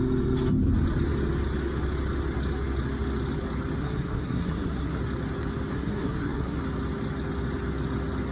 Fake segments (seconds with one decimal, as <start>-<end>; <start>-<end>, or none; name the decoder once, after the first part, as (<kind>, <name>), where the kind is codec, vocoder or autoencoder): 3.8-5.0 (codec, SNAC); 5.7-6.6